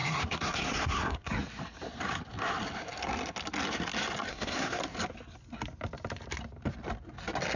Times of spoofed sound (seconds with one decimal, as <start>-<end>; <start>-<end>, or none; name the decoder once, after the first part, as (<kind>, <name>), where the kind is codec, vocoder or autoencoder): 0.0-1.3 (codec, SNAC); 4.3-4.8